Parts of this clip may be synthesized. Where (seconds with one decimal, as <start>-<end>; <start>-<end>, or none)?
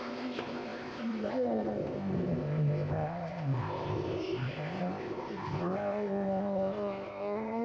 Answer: 0.0-7.6